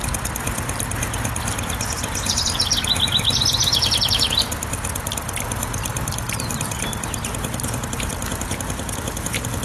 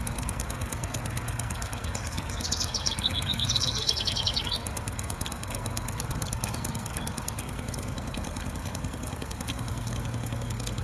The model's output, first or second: second